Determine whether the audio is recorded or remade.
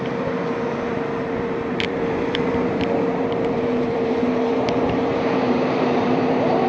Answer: remade